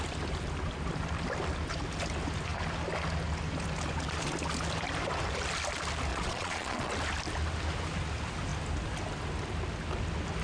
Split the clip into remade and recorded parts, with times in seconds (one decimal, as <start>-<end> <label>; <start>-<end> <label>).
0.0-6.1 recorded; 6.1-6.9 remade; 6.9-10.4 recorded